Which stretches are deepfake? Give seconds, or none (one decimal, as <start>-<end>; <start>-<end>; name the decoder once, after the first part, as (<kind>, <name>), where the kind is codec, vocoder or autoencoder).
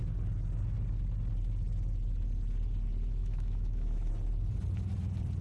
3.2-4.1 (autoencoder, DAC-VAE)